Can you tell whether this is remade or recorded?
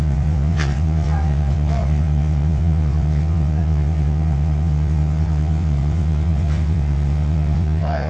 remade